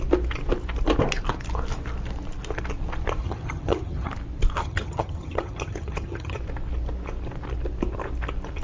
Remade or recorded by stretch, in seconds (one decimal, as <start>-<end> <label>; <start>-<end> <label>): 0.0-3.2 recorded; 3.2-4.1 remade; 4.1-4.6 recorded; 4.6-6.4 remade; 6.4-8.6 recorded